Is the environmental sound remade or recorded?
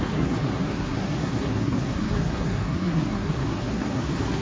remade